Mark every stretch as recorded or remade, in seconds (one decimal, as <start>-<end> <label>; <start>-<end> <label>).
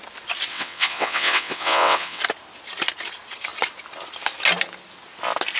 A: 0.0-0.5 recorded; 0.5-2.2 remade; 2.2-5.6 recorded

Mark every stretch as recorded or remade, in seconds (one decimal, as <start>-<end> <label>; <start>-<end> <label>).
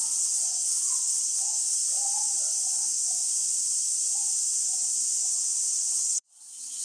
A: 0.0-1.8 remade; 1.8-5.9 recorded; 5.9-6.8 remade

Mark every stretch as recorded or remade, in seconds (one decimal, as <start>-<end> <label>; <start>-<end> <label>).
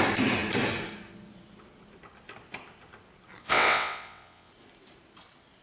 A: 0.0-3.4 recorded; 3.4-4.5 remade; 4.5-5.6 recorded